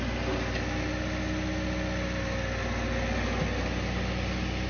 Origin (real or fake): real